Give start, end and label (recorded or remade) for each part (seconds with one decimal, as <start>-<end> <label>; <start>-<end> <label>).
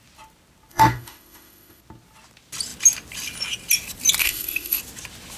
0.0-0.7 recorded; 0.7-1.8 remade; 1.8-4.2 recorded; 4.2-4.8 remade; 4.8-5.4 recorded